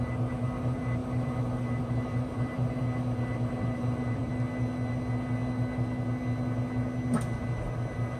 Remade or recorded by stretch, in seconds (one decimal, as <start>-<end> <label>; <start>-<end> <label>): 0.0-4.3 remade; 4.3-7.4 recorded; 7.4-8.2 remade